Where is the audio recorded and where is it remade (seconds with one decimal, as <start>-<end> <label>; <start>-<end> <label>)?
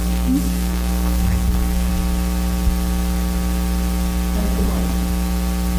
0.0-1.9 remade; 1.9-5.8 recorded